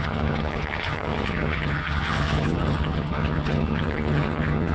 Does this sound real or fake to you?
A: fake